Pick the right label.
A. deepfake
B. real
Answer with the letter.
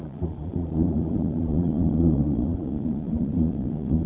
A